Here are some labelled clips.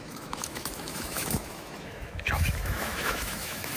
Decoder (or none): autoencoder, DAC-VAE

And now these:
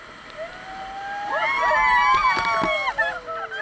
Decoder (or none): none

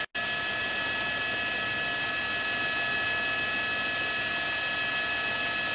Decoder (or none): none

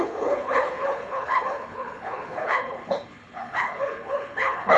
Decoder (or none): codec, HILCodec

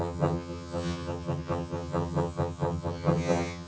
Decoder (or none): vocoder, HiFi-GAN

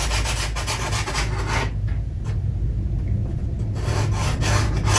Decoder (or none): none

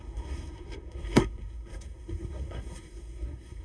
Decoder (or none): codec, SNAC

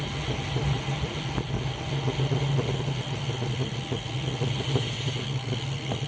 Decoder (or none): none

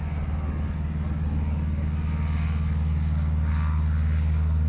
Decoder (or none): none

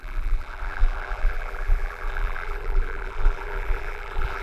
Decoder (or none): vocoder, BigVGAN v2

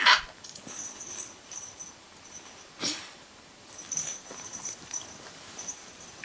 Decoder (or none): vocoder, BigVGAN v2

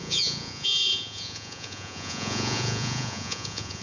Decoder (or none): vocoder, Vocos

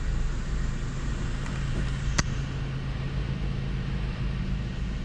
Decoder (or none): none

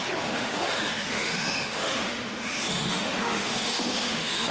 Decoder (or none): autoencoder, DAC-VAE